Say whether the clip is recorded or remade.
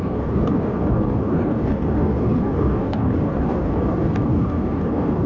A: remade